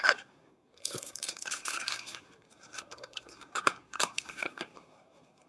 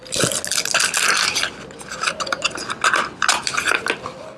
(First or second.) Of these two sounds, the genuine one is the second